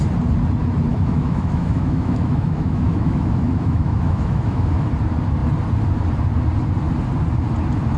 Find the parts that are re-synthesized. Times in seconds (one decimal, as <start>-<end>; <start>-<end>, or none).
0.9-4.9